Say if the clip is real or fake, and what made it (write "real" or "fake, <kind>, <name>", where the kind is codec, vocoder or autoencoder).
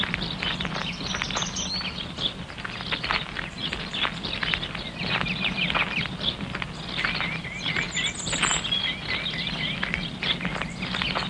real